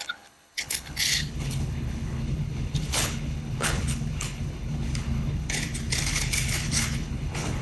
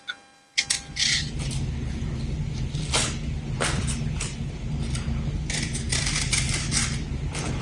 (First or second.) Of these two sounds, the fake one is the first